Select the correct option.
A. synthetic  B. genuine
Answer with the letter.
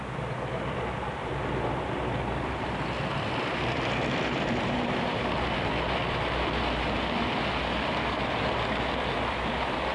A